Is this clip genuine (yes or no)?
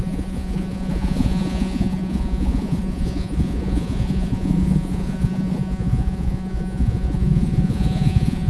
no